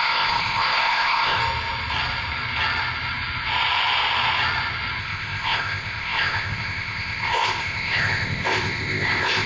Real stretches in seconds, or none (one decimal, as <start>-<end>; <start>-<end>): 1.4-5.0